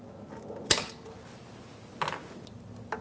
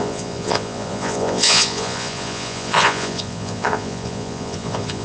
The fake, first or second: second